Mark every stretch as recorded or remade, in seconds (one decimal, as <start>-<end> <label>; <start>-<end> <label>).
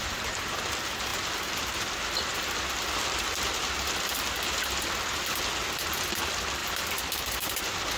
0.0-0.6 remade; 0.6-6.6 recorded; 6.6-7.6 remade; 7.6-8.0 recorded